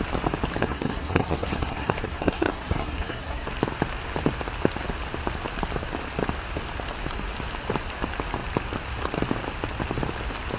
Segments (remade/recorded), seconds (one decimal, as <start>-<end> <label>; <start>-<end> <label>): 0.0-0.6 recorded; 0.6-3.5 remade; 3.5-10.6 recorded